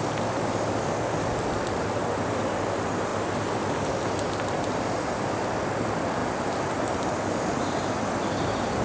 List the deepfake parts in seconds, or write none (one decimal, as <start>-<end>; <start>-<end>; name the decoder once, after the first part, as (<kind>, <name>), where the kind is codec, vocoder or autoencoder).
none